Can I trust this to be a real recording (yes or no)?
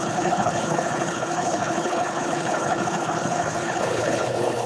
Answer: no